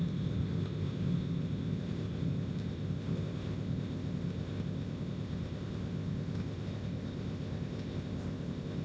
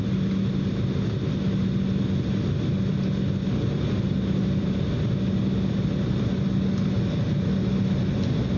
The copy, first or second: first